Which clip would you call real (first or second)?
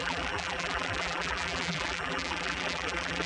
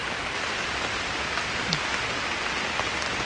second